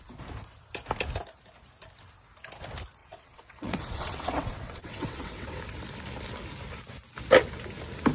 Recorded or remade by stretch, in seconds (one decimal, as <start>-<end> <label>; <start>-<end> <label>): 0.0-3.0 recorded; 3.0-5.6 remade; 5.6-8.1 recorded